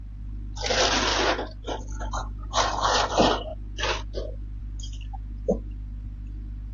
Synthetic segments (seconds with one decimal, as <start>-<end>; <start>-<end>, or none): none